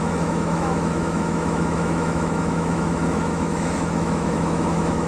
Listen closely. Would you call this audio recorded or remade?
remade